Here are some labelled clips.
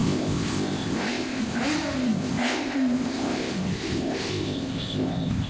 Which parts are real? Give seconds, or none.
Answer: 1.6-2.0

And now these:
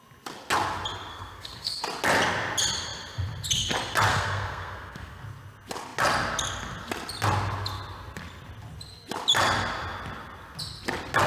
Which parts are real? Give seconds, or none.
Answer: 0.0-1.1; 1.8-4.1; 5.2-11.3